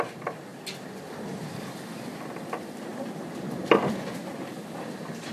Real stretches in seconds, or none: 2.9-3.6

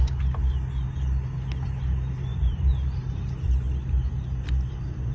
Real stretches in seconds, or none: 0.0-2.3; 3.1-5.1